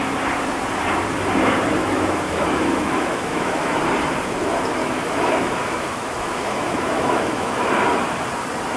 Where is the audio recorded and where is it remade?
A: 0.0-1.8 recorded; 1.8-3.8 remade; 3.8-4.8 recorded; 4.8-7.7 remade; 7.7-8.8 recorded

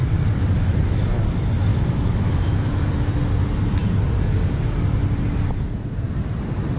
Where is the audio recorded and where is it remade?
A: 0.0-1.7 recorded; 1.7-2.9 remade; 2.9-6.8 recorded

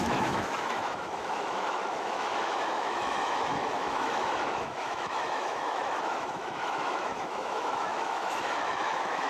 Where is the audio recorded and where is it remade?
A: 0.0-9.3 remade